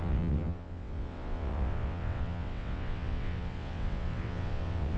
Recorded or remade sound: remade